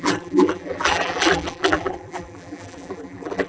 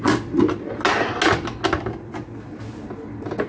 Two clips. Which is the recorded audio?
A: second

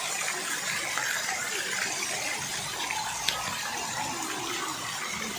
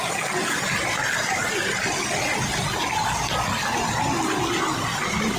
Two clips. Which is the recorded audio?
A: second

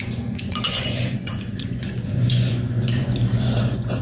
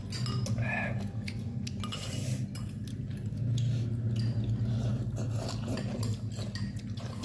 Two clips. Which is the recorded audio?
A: second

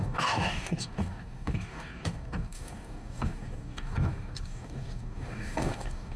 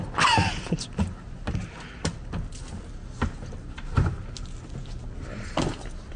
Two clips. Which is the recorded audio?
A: second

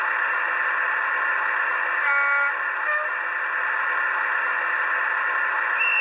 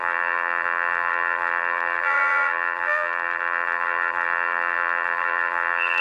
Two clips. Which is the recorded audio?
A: first